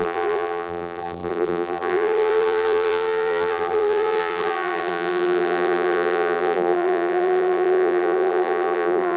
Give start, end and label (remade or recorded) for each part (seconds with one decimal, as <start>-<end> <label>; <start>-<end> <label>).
0.0-9.2 remade